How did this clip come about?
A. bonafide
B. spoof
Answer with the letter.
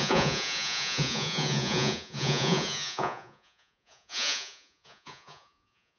B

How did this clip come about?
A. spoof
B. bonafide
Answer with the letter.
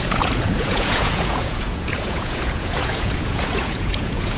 A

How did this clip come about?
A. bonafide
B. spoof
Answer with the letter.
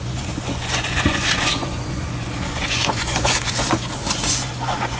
B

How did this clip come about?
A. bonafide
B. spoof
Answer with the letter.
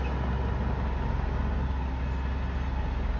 A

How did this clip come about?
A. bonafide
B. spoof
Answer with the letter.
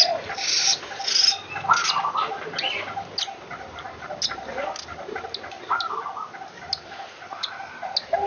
A